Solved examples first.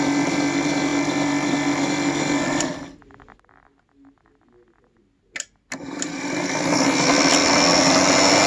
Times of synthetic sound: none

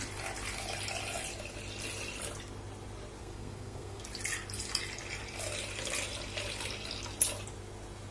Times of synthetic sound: 3.2-4.0 (codec, SNAC)

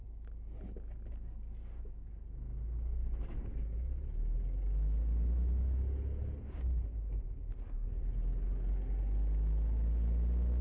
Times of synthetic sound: none

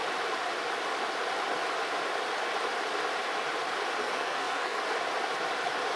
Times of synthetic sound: 4.0-4.8 (codec, SNAC)

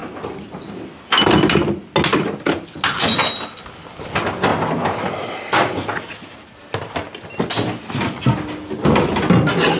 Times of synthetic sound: none

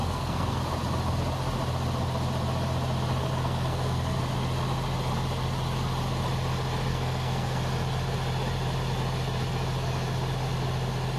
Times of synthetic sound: 0.0-0.6 (codec, SNAC); 3.2-4.2; 6.9-7.6

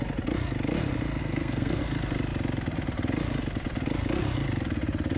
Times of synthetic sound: 1.2-1.8 (codec, SNAC)